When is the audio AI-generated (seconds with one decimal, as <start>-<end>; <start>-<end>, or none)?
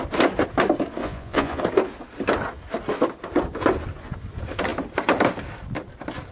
1.0-1.6